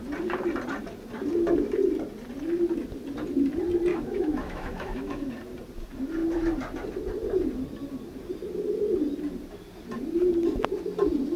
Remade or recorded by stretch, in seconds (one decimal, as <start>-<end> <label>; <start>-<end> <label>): 0.0-3.9 recorded; 3.9-5.3 remade; 5.3-11.4 recorded

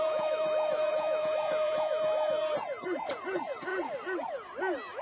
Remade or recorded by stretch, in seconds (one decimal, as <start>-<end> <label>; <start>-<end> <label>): 0.0-3.7 remade; 3.7-5.0 recorded

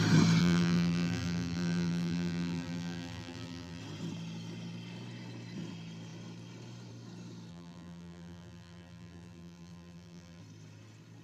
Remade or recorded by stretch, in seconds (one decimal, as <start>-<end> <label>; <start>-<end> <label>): 0.0-0.4 recorded; 0.4-3.8 remade; 3.8-7.5 recorded; 7.5-10.4 remade; 10.4-11.2 recorded